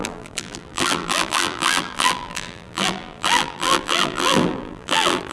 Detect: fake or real fake